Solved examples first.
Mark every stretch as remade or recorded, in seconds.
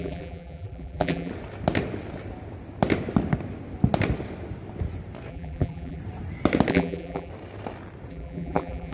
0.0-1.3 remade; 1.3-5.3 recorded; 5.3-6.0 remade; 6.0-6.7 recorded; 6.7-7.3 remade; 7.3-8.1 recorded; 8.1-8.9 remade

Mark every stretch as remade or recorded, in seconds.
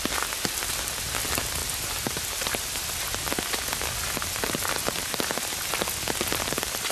0.0-1.6 recorded; 1.6-2.9 remade; 2.9-6.9 recorded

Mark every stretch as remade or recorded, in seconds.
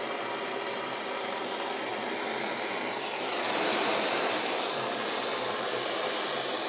0.0-6.7 remade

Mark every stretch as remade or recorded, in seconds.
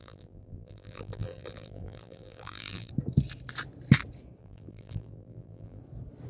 0.0-2.9 remade; 2.9-4.4 recorded; 4.4-5.8 remade; 5.8-6.3 recorded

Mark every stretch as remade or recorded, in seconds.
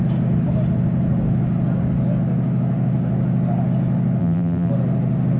0.0-4.2 recorded; 4.2-4.7 remade; 4.7-5.4 recorded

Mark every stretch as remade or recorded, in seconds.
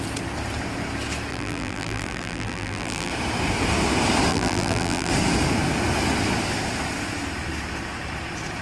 0.0-1.3 recorded; 1.3-3.1 remade; 3.1-4.3 recorded; 4.3-5.1 remade; 5.1-8.6 recorded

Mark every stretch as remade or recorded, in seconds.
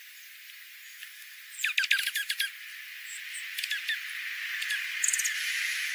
0.0-5.9 recorded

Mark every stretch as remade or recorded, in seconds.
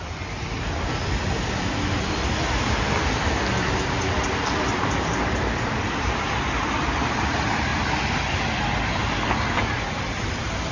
0.0-7.7 remade; 7.7-8.9 recorded; 8.9-10.7 remade